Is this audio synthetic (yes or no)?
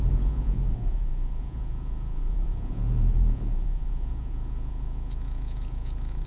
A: yes